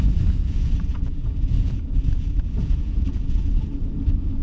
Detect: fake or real fake